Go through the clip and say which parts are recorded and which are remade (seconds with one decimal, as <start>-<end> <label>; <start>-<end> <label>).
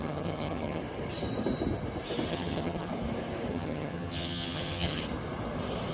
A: 0.0-0.8 remade; 0.8-2.3 recorded; 2.3-2.9 remade; 2.9-3.5 recorded; 3.5-5.0 remade; 5.0-5.9 recorded